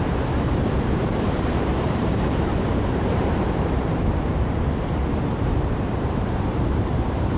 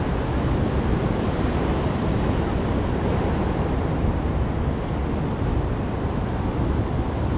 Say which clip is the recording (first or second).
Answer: second